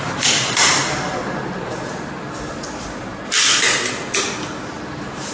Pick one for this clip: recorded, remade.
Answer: recorded